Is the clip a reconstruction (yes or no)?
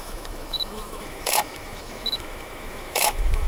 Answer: yes